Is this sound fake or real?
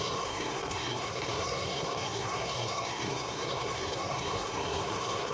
fake